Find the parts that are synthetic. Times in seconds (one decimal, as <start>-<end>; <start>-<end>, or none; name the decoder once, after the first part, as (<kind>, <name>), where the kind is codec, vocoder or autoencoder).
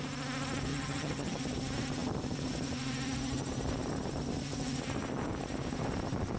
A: 0.7-1.4 (vocoder, HiFi-GAN)